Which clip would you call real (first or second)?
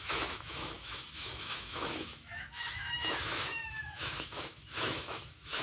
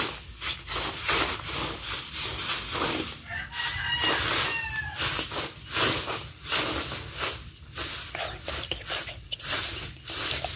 second